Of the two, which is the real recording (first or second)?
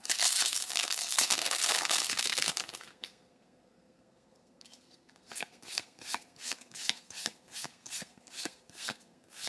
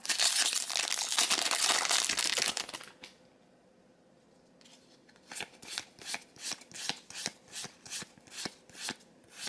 second